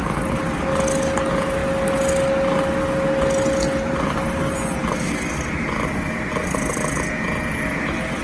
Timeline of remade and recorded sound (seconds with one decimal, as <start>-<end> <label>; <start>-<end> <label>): 0.0-8.2 recorded